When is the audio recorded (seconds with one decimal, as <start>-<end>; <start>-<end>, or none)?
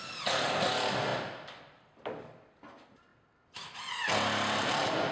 0.0-5.1